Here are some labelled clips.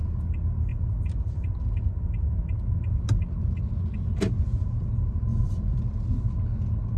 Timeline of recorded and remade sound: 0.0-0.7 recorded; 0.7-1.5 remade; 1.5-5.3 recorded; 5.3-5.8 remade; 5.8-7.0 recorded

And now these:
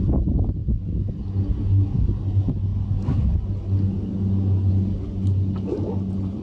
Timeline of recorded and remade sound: 0.0-6.4 recorded

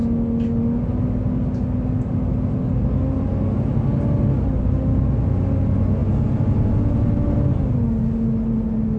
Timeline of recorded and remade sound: 0.0-9.0 recorded

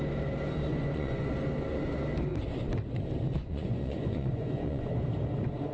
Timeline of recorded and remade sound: 0.0-0.7 recorded; 0.7-1.3 remade; 1.3-3.4 recorded; 3.4-4.9 remade; 4.9-5.7 recorded